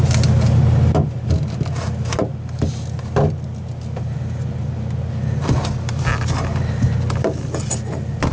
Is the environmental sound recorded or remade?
recorded